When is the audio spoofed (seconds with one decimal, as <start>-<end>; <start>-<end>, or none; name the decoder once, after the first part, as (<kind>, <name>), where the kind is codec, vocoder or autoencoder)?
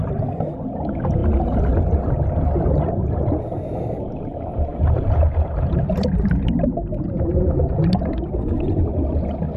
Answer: 4.7-7.0 (vocoder, BigVGAN v2)